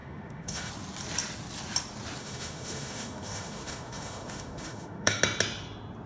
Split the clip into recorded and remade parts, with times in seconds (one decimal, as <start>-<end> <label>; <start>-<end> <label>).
0.0-0.7 remade; 0.7-2.2 recorded; 2.2-5.2 remade; 5.2-6.1 recorded